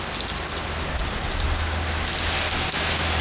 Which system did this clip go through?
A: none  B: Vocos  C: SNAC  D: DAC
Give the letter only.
A